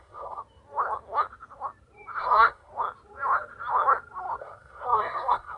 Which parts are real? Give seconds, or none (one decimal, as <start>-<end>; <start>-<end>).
0.4-2.2; 2.7-4.4